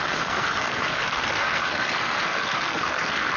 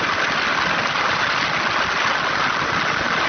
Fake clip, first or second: first